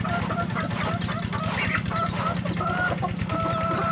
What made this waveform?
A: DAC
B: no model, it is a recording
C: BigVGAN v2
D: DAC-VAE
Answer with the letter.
B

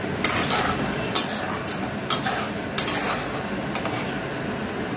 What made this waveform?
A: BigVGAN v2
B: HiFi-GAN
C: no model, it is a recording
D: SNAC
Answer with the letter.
C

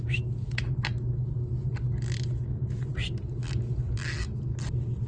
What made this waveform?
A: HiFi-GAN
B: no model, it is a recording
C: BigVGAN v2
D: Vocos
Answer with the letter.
B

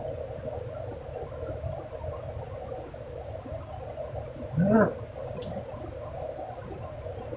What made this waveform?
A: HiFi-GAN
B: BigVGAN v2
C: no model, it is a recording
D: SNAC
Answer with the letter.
C